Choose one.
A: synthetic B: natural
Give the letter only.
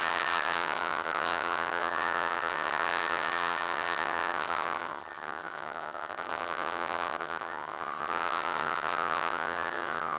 A